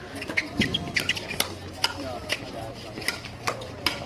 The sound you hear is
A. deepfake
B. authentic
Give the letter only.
B